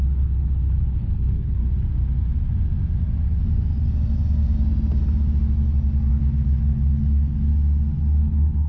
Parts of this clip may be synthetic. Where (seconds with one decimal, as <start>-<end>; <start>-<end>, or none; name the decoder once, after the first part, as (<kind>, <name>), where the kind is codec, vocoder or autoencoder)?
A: 0.0-1.6 (codec, HILCodec); 6.1-7.5; 8.2-8.7